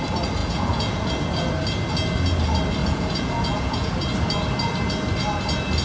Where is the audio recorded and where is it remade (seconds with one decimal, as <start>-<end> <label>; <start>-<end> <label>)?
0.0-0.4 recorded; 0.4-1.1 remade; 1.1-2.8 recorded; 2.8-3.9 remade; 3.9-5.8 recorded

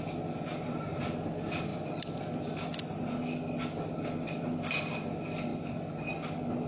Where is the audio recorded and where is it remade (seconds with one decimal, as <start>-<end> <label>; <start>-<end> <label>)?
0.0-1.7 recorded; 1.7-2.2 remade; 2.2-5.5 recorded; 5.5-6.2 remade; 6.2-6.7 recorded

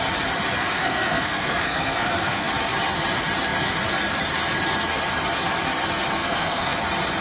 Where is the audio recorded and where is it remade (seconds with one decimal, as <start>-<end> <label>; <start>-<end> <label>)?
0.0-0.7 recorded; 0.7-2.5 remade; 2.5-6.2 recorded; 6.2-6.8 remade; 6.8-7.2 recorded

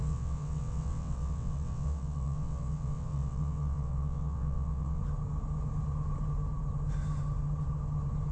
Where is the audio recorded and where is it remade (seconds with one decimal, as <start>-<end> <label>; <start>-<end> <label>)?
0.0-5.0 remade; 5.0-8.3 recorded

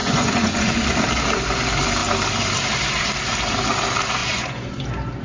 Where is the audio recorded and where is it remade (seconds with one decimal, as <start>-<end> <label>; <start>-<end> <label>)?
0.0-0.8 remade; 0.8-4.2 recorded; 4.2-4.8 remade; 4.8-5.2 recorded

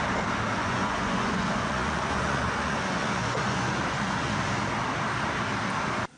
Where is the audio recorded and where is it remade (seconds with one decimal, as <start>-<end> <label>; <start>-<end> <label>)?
0.0-0.6 recorded; 0.6-4.3 remade; 4.3-6.2 recorded

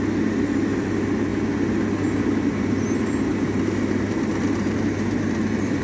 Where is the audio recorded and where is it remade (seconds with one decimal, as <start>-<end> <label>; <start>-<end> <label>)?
0.0-5.8 recorded

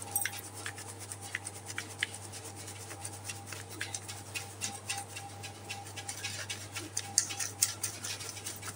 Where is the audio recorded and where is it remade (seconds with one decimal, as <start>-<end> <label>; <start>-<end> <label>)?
0.0-8.8 recorded